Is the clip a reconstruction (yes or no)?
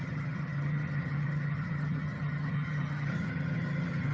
yes